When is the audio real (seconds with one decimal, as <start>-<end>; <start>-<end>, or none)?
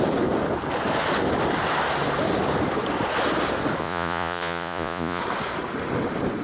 0.0-3.8; 5.2-6.4